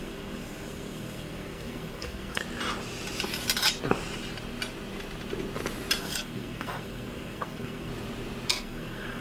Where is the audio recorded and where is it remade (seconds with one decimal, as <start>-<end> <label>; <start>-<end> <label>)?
0.0-2.4 remade; 2.4-6.0 recorded; 6.0-7.9 remade; 7.9-8.5 recorded; 8.5-9.2 remade